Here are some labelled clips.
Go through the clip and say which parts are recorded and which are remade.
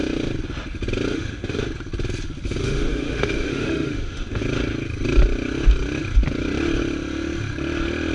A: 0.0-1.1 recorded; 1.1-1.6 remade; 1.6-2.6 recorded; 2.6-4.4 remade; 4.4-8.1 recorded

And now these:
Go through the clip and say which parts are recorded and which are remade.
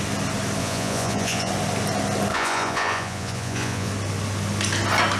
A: 0.0-0.6 recorded; 0.6-1.5 remade; 1.5-2.3 recorded; 2.3-3.9 remade; 3.9-5.2 recorded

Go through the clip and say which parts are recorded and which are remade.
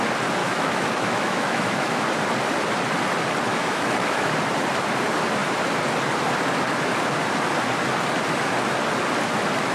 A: 0.0-0.4 recorded; 0.4-2.0 remade; 2.0-3.5 recorded; 3.5-4.3 remade; 4.3-9.7 recorded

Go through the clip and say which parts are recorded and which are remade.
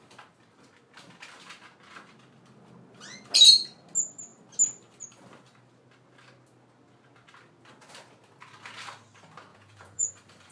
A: 0.0-9.5 recorded; 9.5-10.1 remade; 10.1-10.5 recorded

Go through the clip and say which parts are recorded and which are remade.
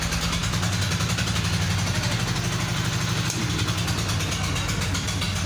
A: 0.0-5.5 recorded